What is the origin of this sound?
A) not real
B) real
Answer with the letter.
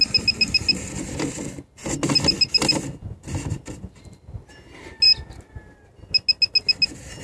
B